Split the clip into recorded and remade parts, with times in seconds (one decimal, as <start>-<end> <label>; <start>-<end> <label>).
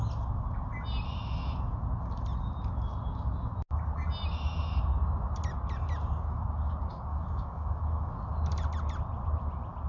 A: 0.0-7.1 recorded; 7.1-8.1 remade; 8.1-9.9 recorded